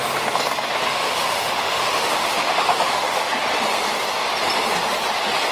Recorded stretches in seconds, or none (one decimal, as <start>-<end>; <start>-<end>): 0.0-0.9; 3.4-5.5